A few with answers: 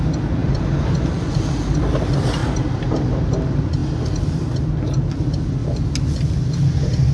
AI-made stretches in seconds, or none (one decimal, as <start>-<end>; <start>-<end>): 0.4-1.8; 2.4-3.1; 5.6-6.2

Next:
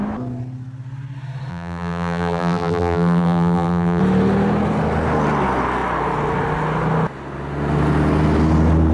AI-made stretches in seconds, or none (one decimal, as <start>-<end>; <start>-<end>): 1.5-4.0

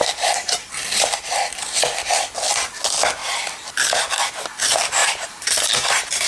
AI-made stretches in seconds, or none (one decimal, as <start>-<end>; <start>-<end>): 0.0-1.7; 3.2-4.3; 5.0-6.3

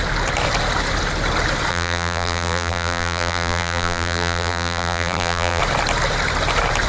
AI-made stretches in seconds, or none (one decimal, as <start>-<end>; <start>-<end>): 1.7-5.6

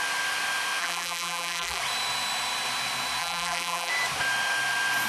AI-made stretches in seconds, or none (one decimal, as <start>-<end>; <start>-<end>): 0.8-1.8; 3.2-3.9